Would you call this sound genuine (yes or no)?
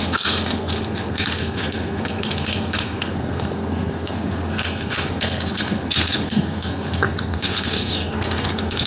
no